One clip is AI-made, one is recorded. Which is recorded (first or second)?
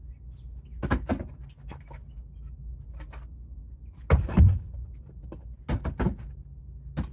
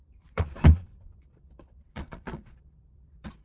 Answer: first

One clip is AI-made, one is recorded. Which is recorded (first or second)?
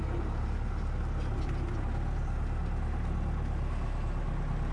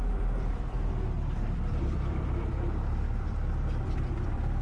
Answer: first